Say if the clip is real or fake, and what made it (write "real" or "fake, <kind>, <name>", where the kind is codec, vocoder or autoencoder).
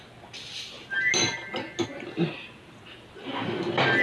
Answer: real